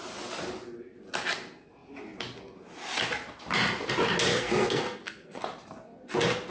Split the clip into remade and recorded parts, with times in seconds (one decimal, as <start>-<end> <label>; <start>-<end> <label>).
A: 0.0-4.3 recorded; 4.3-5.4 remade; 5.4-6.5 recorded